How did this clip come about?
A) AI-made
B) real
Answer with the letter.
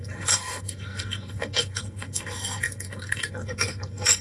A